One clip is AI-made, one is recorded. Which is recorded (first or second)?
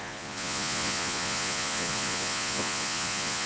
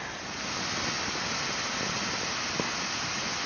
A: second